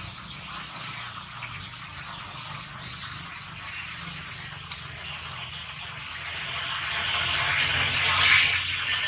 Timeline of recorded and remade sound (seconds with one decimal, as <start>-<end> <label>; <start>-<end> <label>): 0.0-9.1 recorded